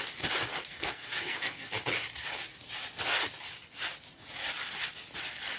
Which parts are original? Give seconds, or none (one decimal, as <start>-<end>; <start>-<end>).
0.0-0.5; 1.7-5.6